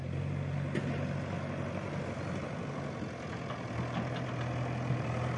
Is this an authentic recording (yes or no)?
yes